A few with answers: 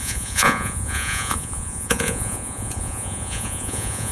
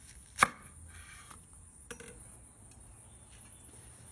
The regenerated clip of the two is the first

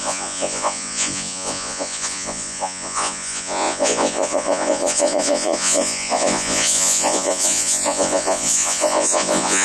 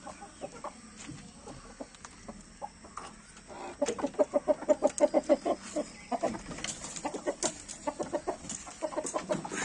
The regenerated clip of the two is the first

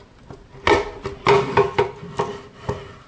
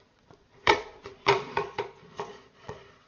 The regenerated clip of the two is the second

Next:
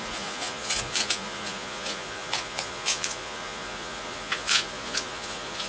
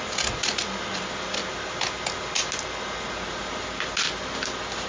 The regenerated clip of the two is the first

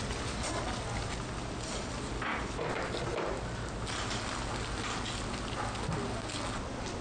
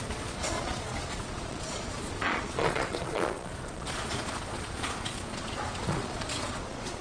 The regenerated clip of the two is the second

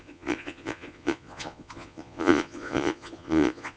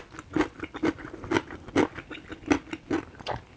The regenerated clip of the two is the first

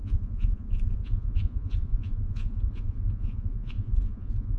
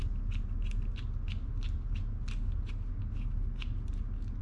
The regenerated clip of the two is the first